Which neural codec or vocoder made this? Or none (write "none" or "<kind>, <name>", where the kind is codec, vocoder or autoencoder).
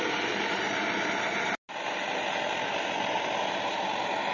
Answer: none